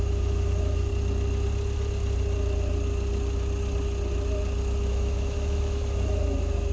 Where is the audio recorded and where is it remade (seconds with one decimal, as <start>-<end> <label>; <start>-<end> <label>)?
0.0-0.9 remade; 0.9-4.9 recorded; 4.9-6.7 remade